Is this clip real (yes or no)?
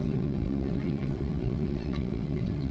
no